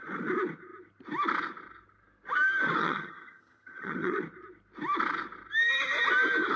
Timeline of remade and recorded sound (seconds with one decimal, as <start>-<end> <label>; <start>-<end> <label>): 0.0-2.8 recorded; 2.8-4.2 remade; 4.2-6.6 recorded